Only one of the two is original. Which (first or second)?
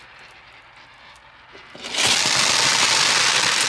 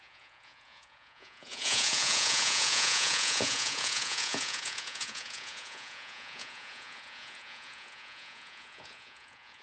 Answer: first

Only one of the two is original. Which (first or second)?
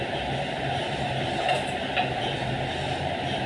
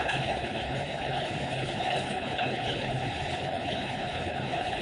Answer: first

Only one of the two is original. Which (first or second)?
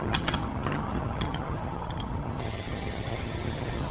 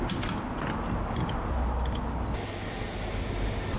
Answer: second